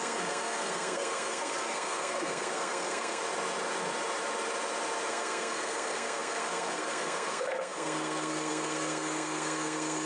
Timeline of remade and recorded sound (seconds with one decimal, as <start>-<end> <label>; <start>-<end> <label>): 0.0-3.2 remade; 3.2-5.1 recorded; 5.1-10.1 remade